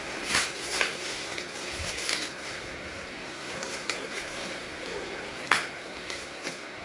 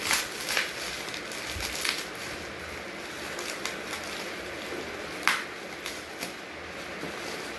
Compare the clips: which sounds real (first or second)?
second